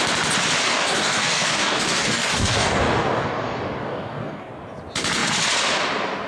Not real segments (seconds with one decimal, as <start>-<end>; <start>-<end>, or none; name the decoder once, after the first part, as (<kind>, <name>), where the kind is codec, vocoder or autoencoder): 0.7-4.5 (codec, DAC)